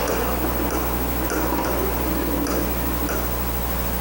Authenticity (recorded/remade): recorded